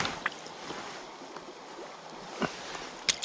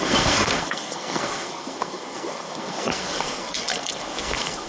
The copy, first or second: second